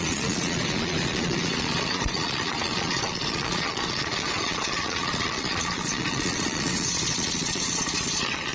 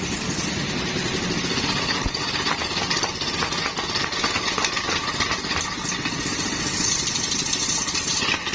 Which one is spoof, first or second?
first